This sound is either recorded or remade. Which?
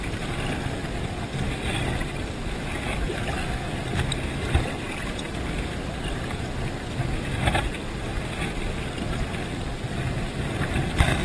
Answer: recorded